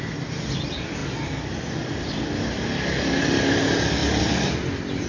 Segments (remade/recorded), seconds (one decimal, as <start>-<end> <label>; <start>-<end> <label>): 0.0-4.0 recorded; 4.0-5.1 remade